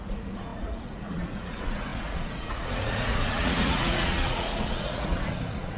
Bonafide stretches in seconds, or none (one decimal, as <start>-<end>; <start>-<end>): none